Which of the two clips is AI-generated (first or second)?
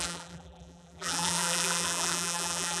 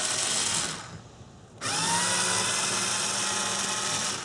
first